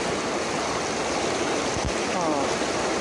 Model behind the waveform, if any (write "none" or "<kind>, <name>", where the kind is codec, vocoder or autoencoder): none